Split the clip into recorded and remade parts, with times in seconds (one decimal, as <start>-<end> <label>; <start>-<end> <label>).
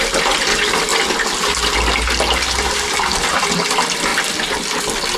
0.0-5.2 recorded